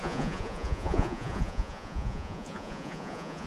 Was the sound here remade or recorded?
remade